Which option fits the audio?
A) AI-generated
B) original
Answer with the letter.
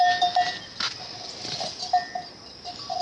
B